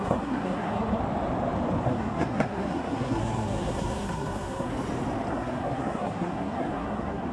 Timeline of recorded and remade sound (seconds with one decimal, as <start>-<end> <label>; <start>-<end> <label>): 0.0-1.0 remade; 1.0-1.8 recorded; 1.8-4.7 remade; 4.7-5.3 recorded; 5.3-7.3 remade